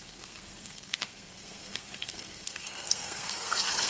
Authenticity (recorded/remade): remade